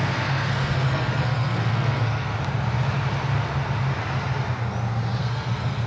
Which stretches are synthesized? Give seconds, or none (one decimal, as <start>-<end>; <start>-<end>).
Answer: 0.0-2.3; 5.2-5.9